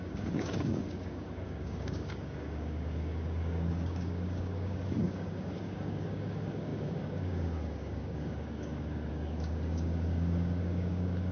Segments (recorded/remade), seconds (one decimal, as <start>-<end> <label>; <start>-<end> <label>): 0.0-11.3 remade